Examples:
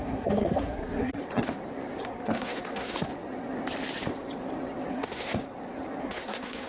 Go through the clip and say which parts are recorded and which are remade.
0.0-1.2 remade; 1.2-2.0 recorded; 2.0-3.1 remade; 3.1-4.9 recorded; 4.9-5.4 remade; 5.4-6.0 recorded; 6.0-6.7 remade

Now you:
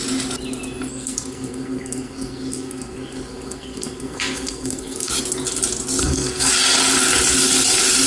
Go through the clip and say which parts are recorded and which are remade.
0.0-0.9 recorded; 0.9-5.1 remade; 5.1-6.0 recorded; 6.0-6.5 remade; 6.5-8.1 recorded

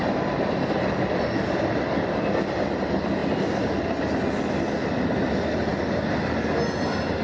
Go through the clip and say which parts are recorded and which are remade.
0.0-7.2 recorded

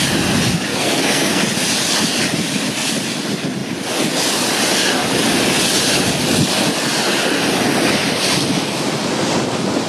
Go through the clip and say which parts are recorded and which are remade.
0.0-0.7 recorded; 0.7-1.4 remade; 1.4-9.9 recorded

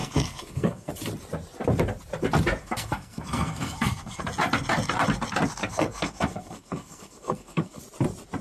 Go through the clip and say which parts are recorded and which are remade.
0.0-0.9 remade; 0.9-2.6 recorded; 2.6-4.2 remade; 4.2-5.6 recorded; 5.6-7.8 remade; 7.8-8.4 recorded